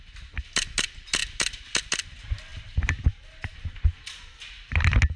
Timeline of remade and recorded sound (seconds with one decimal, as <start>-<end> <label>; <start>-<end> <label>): 0.0-5.2 recorded